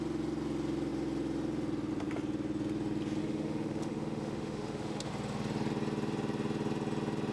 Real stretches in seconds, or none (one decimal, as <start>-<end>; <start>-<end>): 0.0-3.2; 5.1-7.3